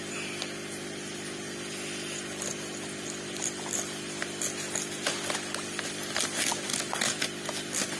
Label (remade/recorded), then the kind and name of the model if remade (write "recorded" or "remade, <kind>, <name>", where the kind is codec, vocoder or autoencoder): recorded